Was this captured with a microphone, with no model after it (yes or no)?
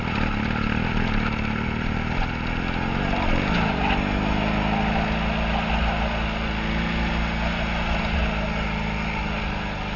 yes